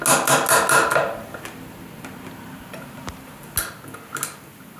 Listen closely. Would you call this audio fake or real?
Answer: real